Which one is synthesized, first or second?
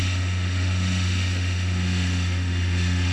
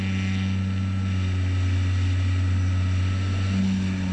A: first